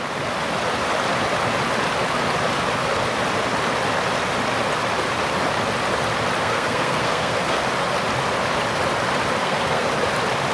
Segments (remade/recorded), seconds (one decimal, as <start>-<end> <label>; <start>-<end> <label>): 0.0-6.4 recorded; 6.4-7.6 remade; 7.6-9.4 recorded; 9.4-9.9 remade; 9.9-10.5 recorded

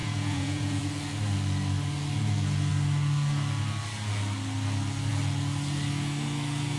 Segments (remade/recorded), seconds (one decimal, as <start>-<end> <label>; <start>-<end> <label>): 0.0-0.8 remade; 0.8-6.8 recorded

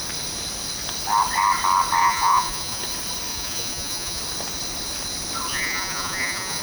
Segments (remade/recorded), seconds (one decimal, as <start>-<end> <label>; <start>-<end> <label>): 0.0-2.0 recorded; 2.0-2.8 remade; 2.8-3.3 recorded; 3.3-4.2 remade; 4.2-5.5 recorded; 5.5-6.6 remade

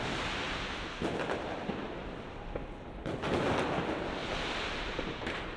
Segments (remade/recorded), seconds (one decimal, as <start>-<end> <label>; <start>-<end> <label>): 0.0-4.2 recorded; 4.2-5.6 remade

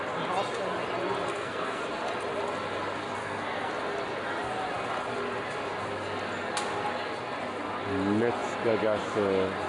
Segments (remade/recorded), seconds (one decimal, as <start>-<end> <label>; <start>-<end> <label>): 0.0-1.3 recorded; 1.3-1.8 remade; 1.8-3.2 recorded; 3.2-3.7 remade; 3.7-9.7 recorded

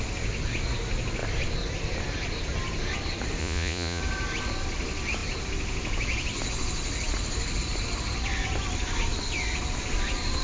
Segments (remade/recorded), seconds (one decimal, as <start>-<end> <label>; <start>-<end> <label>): 0.0-3.4 recorded; 3.4-4.0 remade; 4.0-10.4 recorded

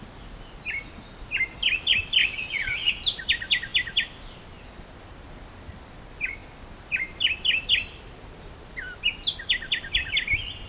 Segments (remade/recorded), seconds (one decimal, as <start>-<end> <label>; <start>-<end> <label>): 0.0-2.2 recorded; 2.2-2.9 remade; 2.9-10.7 recorded

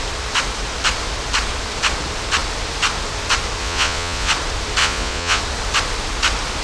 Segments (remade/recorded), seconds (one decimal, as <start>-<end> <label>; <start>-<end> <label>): 0.0-3.6 recorded; 3.6-4.3 remade; 4.3-4.8 recorded; 4.8-5.4 remade; 5.4-6.6 recorded